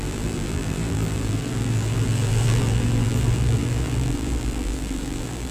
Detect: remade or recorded remade